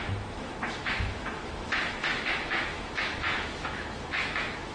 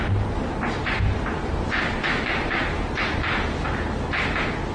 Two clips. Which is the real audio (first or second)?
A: second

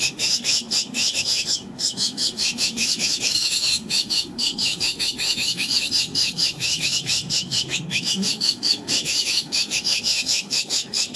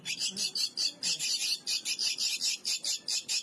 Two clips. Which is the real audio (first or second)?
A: second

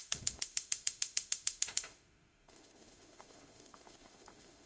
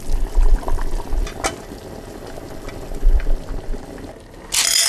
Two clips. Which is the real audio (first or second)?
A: second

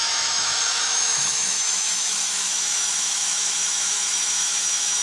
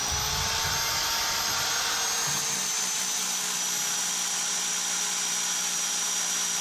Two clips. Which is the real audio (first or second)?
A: second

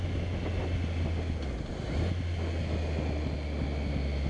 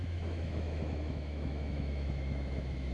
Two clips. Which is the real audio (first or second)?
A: first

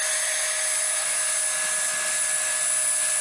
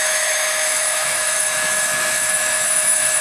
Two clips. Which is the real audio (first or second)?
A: first